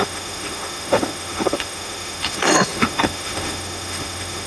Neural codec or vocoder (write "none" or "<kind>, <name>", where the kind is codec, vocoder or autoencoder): autoencoder, DAC-VAE